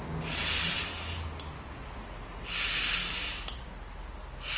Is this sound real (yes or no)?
yes